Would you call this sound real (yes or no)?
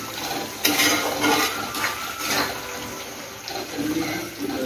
yes